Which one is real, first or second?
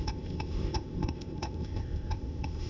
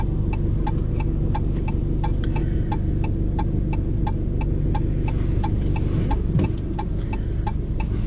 second